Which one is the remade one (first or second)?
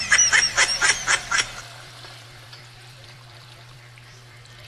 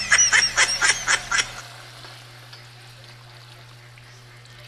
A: first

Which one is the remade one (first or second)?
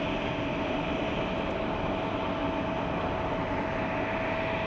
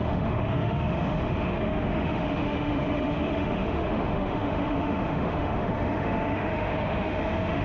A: second